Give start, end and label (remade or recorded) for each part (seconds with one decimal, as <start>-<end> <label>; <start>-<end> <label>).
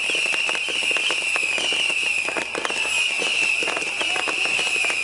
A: 0.0-5.0 recorded